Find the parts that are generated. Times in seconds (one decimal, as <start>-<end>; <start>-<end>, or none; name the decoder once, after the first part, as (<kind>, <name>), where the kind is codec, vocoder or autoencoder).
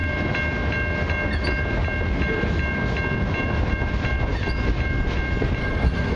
5.6-6.2 (codec, SNAC)